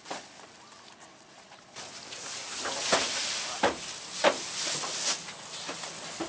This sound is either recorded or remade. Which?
recorded